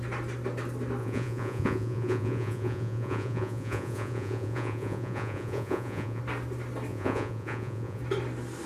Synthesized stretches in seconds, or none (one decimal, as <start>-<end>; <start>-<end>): 1.0-6.2; 6.9-8.0